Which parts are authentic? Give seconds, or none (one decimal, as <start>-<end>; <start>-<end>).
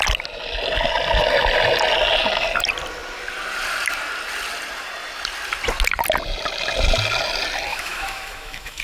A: 0.0-7.7